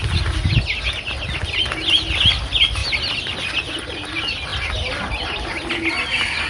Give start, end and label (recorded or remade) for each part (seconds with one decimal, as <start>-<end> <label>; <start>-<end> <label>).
0.0-6.5 recorded